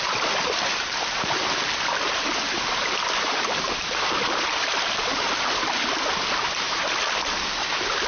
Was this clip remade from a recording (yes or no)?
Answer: no